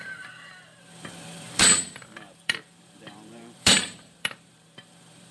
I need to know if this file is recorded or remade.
remade